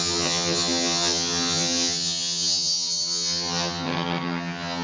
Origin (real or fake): fake